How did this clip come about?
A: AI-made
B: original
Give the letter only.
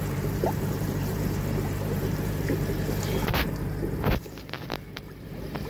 A